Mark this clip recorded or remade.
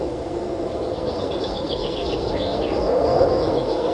remade